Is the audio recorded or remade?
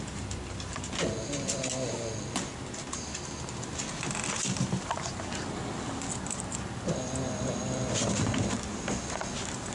recorded